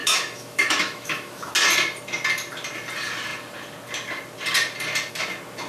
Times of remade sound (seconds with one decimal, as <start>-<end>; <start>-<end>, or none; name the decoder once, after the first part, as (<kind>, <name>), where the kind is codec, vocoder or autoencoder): 0.0-1.5 (autoencoder, DAC-VAE)